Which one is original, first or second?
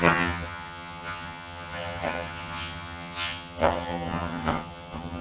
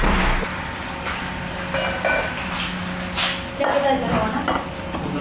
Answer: second